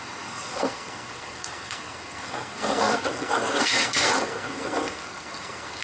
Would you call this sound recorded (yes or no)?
no